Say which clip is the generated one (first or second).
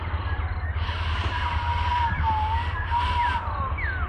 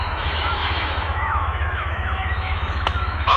second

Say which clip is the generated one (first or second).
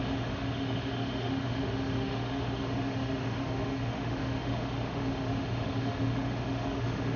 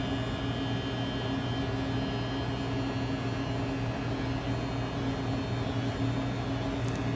first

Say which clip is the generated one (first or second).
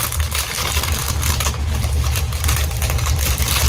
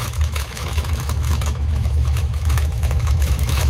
second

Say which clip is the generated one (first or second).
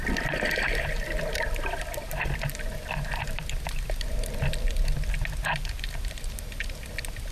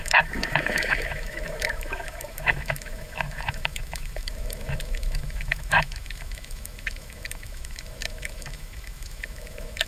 second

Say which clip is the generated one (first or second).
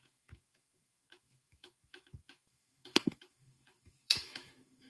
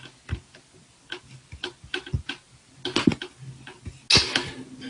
first